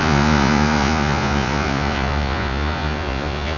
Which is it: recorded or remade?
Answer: remade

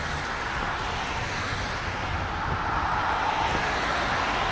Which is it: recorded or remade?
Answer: recorded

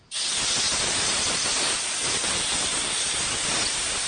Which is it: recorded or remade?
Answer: recorded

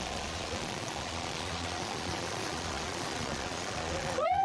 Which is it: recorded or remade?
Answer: remade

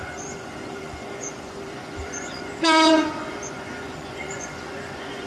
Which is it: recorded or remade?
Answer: remade